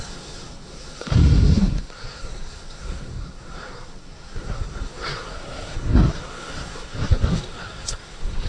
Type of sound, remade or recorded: remade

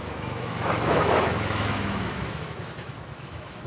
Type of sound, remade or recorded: remade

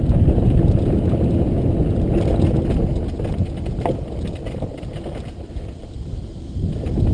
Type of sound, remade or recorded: recorded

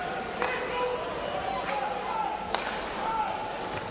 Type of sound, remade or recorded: recorded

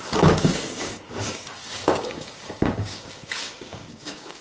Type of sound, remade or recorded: remade